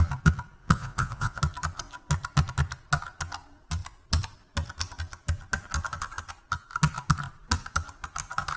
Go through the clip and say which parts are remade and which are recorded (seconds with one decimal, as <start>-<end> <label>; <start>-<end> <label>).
0.0-0.6 recorded; 0.6-1.4 remade; 1.4-8.6 recorded